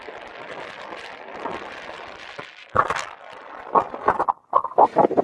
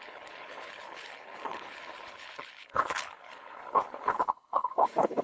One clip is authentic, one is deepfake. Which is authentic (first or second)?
first